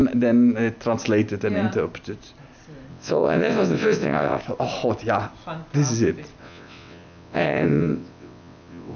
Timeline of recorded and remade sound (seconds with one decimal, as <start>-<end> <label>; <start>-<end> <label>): 0.0-2.9 recorded; 2.9-4.4 remade; 4.4-6.4 recorded; 6.4-9.0 remade

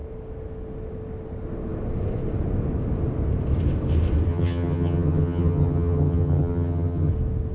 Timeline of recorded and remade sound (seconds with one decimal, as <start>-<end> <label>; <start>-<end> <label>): 0.0-4.3 recorded; 4.3-7.1 remade; 7.1-7.5 recorded

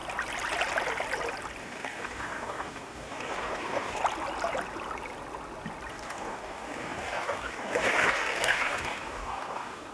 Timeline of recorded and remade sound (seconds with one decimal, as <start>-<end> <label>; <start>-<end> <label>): 0.0-1.6 recorded; 1.6-4.0 remade; 4.0-5.9 recorded; 5.9-9.9 remade

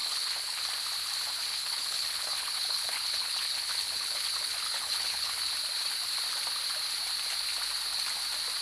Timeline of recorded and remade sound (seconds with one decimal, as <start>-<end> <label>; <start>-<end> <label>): 0.0-0.6 remade; 0.6-1.5 recorded; 1.5-5.4 remade; 5.4-8.6 recorded

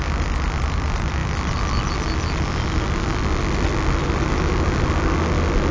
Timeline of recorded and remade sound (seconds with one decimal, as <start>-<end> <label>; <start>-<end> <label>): 0.0-5.7 recorded